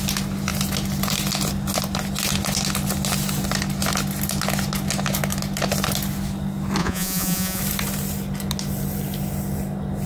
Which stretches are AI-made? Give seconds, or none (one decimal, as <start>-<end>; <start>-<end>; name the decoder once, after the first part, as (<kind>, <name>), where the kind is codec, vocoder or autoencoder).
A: 6.8-7.6 (vocoder, Vocos)